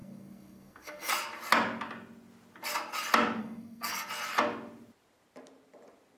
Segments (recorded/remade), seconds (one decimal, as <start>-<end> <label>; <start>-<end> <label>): 0.0-1.1 remade; 1.1-3.4 recorded; 3.4-4.1 remade; 4.1-6.2 recorded